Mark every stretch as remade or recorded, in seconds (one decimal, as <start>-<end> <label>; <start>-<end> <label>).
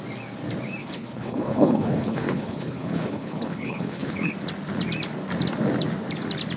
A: 0.0-0.8 recorded; 0.8-4.3 remade; 4.3-6.6 recorded